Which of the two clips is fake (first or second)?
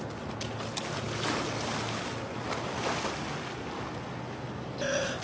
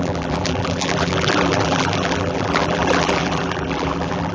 second